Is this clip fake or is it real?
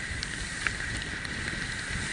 real